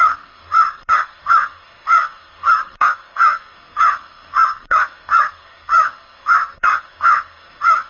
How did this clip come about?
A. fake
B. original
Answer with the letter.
A